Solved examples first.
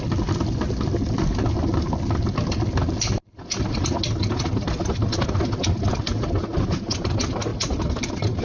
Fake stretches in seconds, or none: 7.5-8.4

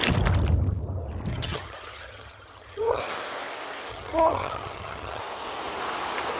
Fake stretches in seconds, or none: 1.3-3.0; 3.9-5.2

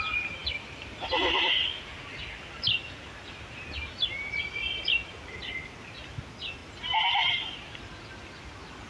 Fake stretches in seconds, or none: none

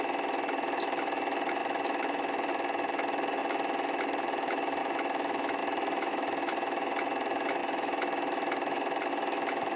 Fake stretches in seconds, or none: 0.0-9.8

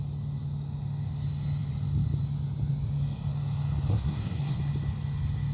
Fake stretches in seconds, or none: 3.9-4.6

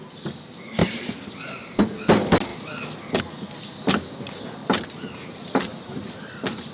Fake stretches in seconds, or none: 0.8-1.8; 4.6-6.2

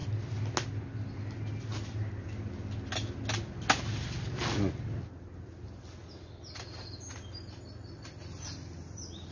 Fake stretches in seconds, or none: none

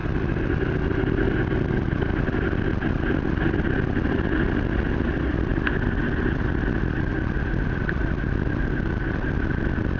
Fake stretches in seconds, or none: none